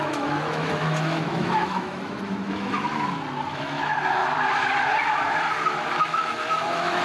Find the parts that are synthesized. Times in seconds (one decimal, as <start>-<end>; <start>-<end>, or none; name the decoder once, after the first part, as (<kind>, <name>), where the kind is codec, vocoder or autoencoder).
0.0-2.9 (autoencoder, DAC-VAE); 3.5-4.2; 6.0-7.0